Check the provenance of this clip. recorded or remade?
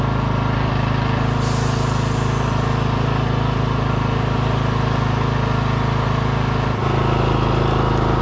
recorded